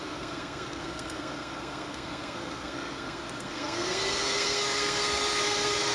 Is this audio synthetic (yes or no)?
yes